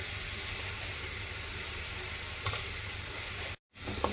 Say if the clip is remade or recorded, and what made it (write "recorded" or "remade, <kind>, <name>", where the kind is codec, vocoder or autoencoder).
recorded